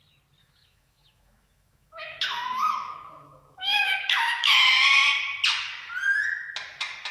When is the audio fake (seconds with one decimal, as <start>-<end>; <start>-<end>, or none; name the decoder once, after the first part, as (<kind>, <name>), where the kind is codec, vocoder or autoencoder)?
0.4-4.7 (autoencoder, DAC-VAE)